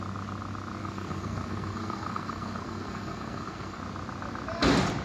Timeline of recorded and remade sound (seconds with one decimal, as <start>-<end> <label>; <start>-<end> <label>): 0.0-0.8 recorded; 0.8-3.8 remade; 3.8-5.0 recorded